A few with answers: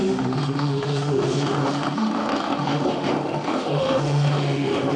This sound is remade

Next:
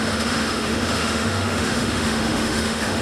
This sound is remade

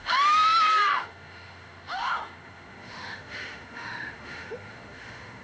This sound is remade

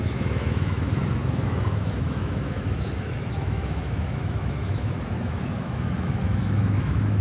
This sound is remade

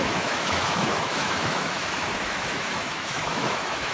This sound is remade